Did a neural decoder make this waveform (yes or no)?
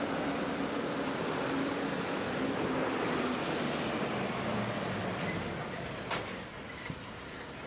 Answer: yes